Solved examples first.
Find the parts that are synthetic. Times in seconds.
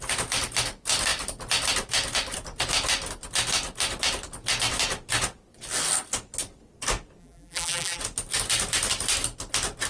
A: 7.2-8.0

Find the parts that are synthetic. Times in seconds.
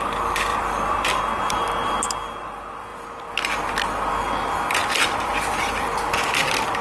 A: 0.5-1.2; 4.8-6.1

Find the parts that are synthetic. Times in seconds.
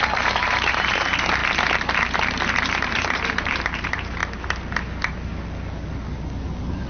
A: 0.0-1.4; 2.6-4.2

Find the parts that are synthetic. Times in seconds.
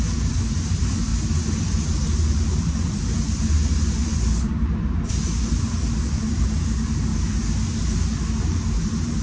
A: 0.0-1.1; 1.6-7.1; 7.7-8.1; 8.7-9.2